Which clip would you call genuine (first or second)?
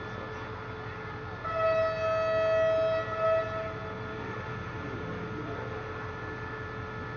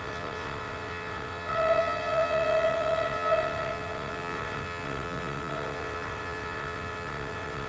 first